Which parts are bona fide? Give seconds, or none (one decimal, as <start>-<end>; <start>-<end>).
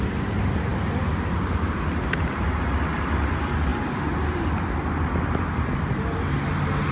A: 0.0-6.9